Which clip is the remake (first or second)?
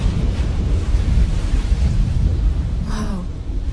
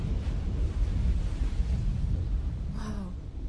first